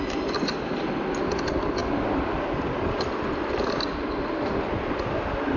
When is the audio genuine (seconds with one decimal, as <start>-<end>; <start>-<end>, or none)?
0.0-5.6